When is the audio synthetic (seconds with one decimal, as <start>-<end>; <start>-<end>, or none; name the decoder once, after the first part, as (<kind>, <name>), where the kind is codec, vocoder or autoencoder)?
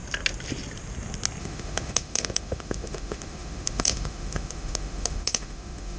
1.4-6.0 (autoencoder, DAC-VAE)